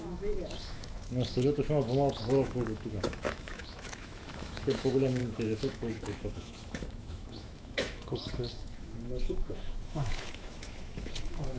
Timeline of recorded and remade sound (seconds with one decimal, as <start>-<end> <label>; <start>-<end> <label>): 0.0-11.6 remade